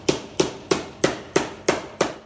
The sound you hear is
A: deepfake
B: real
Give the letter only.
A